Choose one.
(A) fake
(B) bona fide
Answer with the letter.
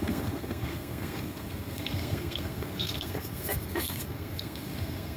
A